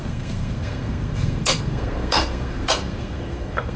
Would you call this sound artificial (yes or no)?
yes